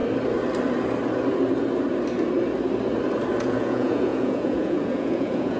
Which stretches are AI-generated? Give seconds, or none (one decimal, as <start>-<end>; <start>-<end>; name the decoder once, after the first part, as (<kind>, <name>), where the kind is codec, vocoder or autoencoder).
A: 3.4-5.6 (vocoder, Vocos)